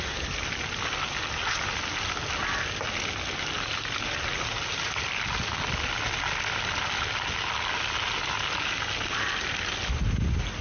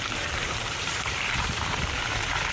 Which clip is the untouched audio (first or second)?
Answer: first